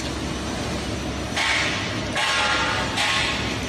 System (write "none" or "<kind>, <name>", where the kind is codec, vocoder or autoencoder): none